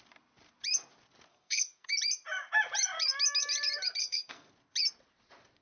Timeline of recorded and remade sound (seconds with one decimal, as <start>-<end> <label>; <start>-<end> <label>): 0.0-1.3 recorded; 1.3-1.9 remade; 1.9-4.0 recorded; 4.0-4.5 remade; 4.5-5.6 recorded